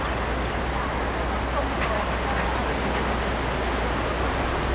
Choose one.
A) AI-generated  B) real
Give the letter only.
B